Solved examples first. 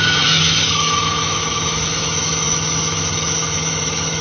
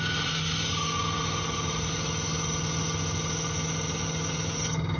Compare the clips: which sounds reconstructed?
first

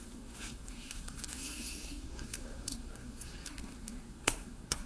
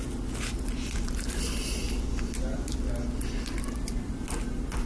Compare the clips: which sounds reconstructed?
first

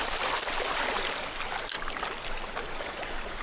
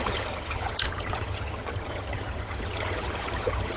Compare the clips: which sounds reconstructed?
second